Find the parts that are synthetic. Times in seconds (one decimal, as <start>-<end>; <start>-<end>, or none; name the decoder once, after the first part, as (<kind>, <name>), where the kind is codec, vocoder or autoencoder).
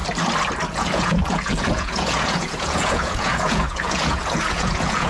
0.7-5.1 (vocoder, Vocos)